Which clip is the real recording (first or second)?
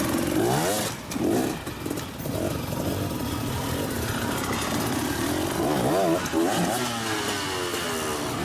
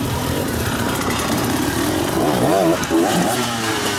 first